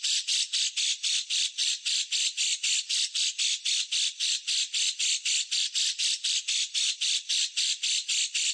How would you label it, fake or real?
fake